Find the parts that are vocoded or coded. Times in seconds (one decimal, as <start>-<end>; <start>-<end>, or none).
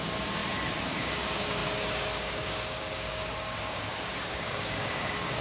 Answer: 0.0-0.4; 0.9-5.4